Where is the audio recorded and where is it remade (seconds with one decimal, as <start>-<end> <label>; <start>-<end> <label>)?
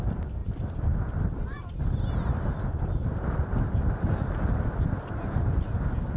0.0-6.2 recorded